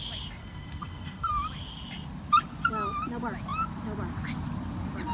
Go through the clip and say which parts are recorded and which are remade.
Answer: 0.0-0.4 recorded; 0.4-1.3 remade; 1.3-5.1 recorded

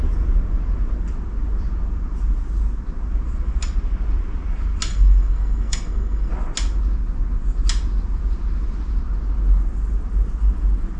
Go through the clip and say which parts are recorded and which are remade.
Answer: 0.0-4.9 recorded; 4.9-6.3 remade; 6.3-11.0 recorded

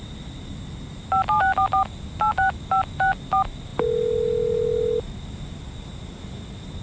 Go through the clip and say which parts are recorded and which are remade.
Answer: 0.0-6.8 recorded

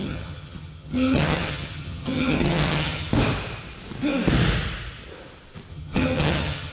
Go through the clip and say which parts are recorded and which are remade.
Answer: 0.0-3.1 remade; 3.1-5.7 recorded; 5.7-6.7 remade

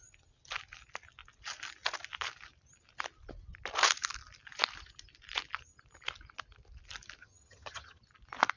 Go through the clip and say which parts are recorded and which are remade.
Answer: 0.0-7.2 recorded; 7.2-8.0 remade; 8.0-8.6 recorded

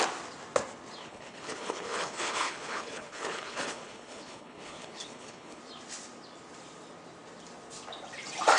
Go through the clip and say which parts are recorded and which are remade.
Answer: 0.0-1.0 recorded; 1.0-5.6 remade; 5.6-8.6 recorded

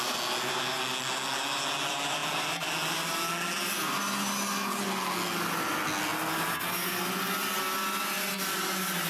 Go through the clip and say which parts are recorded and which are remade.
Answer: 0.0-9.1 recorded